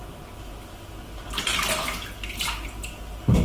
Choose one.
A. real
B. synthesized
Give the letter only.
A